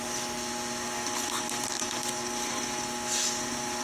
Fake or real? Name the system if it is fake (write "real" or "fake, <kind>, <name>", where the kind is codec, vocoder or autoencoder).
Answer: real